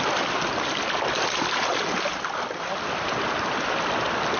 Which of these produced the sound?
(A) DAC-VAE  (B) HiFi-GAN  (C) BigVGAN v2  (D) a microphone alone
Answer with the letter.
D